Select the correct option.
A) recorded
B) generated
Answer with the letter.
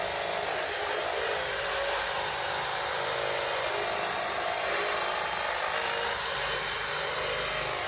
A